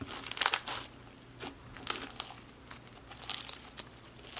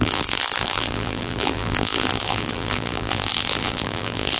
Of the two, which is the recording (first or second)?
first